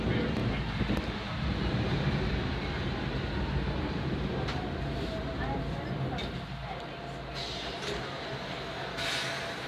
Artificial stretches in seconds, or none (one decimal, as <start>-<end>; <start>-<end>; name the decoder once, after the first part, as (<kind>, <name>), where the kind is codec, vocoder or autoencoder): 0.4-5.6 (vocoder, BigVGAN v2)